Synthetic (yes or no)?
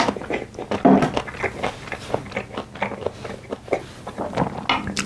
no